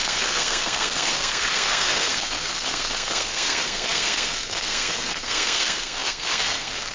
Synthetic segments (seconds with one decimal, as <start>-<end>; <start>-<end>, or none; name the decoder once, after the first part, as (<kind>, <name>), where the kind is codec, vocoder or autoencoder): 0.0-6.9 (codec, SNAC)